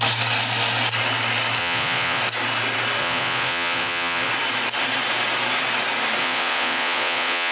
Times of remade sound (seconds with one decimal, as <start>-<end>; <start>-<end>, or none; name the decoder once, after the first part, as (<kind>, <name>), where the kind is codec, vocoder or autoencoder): 1.6-2.2 (vocoder, Vocos); 3.0-4.3; 6.2-7.5